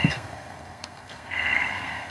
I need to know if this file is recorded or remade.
remade